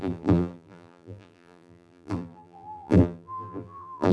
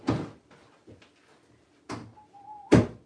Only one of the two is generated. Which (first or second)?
first